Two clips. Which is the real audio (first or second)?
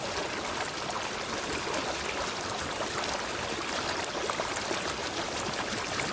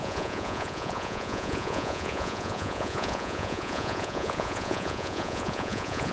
first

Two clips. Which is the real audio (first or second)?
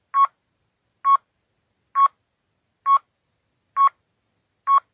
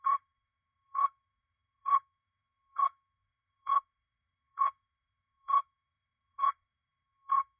first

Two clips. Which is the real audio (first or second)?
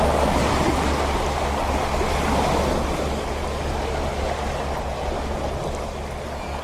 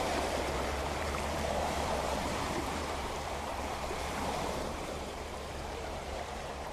first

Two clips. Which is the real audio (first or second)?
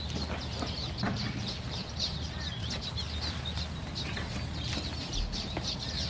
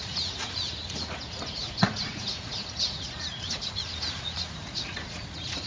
first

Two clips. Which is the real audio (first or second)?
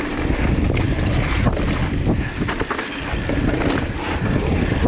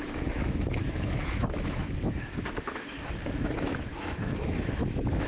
first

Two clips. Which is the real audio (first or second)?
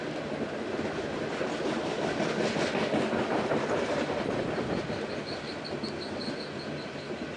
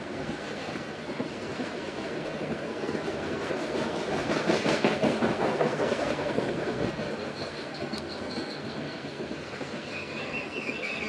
first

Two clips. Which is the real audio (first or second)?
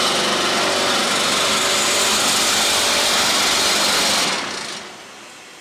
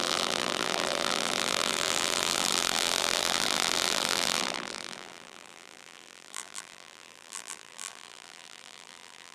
first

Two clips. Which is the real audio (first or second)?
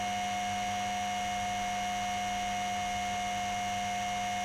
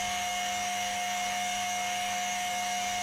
first